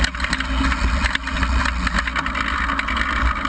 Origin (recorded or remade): recorded